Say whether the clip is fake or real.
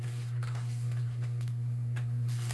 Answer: fake